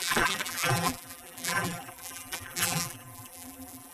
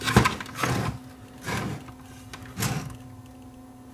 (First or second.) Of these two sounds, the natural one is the second